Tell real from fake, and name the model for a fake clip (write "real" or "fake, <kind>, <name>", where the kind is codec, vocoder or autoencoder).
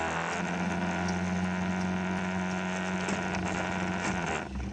real